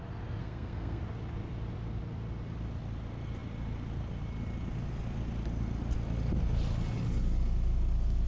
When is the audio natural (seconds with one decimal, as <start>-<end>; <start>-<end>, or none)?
0.0-0.4; 1.0-8.3